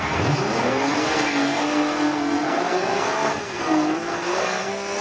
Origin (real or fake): fake